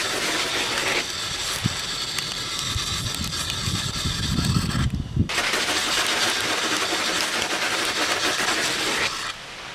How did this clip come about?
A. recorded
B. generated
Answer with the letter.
A